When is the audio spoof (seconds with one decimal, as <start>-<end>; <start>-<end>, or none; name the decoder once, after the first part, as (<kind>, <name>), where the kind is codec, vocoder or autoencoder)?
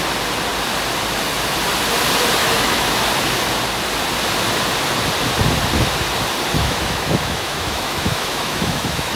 2.4-3.0 (autoencoder, DAC-VAE); 6.6-9.2